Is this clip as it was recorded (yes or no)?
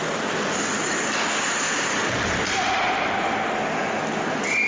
yes